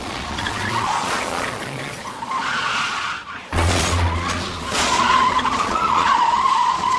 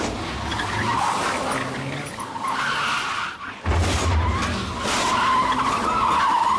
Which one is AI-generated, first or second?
first